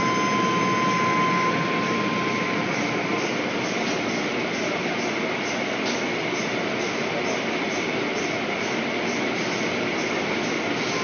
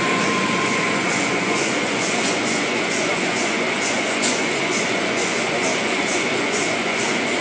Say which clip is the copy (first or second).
second